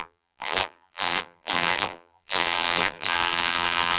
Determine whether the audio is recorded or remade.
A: remade